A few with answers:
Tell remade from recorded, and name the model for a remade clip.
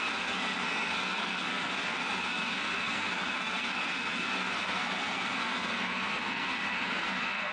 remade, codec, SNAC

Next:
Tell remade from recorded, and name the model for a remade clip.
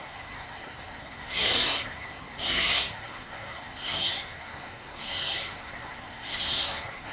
remade, codec, SNAC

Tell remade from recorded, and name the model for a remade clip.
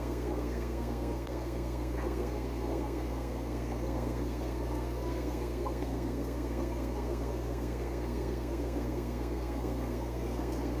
remade, codec, SNAC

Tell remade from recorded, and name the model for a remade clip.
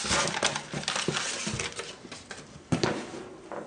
recorded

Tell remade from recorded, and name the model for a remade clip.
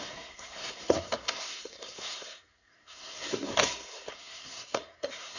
remade, codec, SNAC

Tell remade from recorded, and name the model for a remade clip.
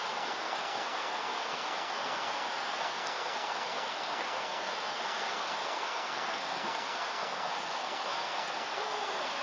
remade, codec, SNAC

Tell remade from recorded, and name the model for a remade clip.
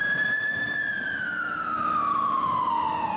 recorded